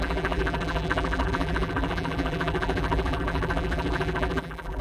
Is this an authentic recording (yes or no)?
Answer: no